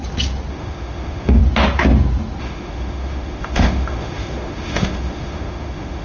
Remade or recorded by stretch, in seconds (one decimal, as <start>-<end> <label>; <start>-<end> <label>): 0.0-0.5 recorded; 0.5-1.4 remade; 1.4-2.4 recorded; 2.4-6.0 remade